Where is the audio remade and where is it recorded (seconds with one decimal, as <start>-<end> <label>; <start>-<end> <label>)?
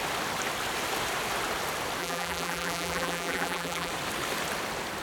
0.0-2.0 recorded; 2.0-3.9 remade; 3.9-5.0 recorded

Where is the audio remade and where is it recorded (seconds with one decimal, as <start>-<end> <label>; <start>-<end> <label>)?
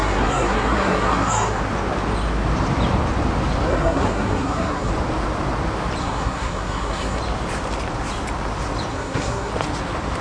0.0-1.6 remade; 1.6-3.7 recorded; 3.7-4.9 remade; 4.9-6.0 recorded; 6.0-7.2 remade; 7.2-8.9 recorded; 8.9-9.5 remade; 9.5-10.2 recorded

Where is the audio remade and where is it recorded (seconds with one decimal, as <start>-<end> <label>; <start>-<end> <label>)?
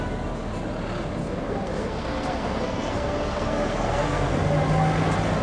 0.0-1.2 recorded; 1.2-4.4 remade; 4.4-5.4 recorded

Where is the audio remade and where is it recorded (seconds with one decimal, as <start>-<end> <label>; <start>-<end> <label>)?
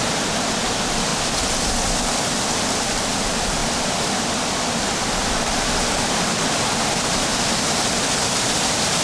0.0-1.1 remade; 1.1-1.7 recorded; 1.7-7.3 remade; 7.3-8.3 recorded; 8.3-9.0 remade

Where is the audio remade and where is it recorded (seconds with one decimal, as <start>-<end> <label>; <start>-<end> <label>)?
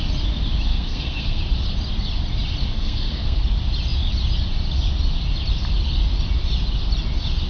0.0-0.7 recorded; 0.7-1.4 remade; 1.4-2.6 recorded; 2.6-3.4 remade; 3.4-7.5 recorded